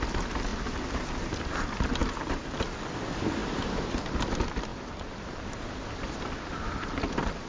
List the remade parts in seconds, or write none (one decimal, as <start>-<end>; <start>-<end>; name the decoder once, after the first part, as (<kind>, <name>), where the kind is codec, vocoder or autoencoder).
none